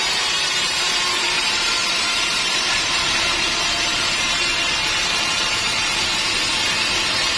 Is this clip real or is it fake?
fake